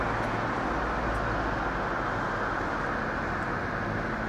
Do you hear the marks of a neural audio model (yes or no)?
no